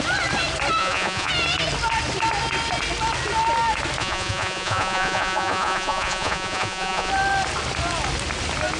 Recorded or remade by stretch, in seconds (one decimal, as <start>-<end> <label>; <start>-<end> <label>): 0.0-0.8 recorded; 0.8-1.3 remade; 1.3-4.0 recorded; 4.0-7.1 remade; 7.1-8.8 recorded